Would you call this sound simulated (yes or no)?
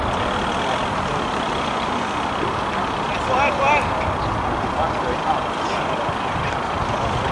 no